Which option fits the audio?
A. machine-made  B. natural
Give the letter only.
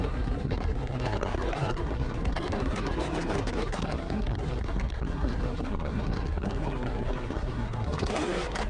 A